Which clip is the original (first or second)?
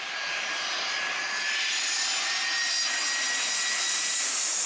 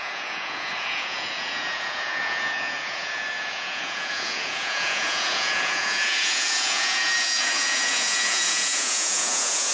first